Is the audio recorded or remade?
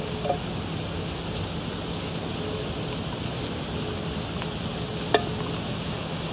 recorded